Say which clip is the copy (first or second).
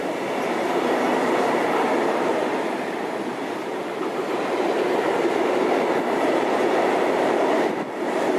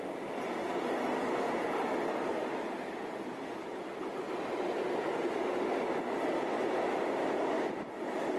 first